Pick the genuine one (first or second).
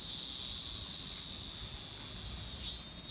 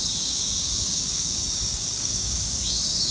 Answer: first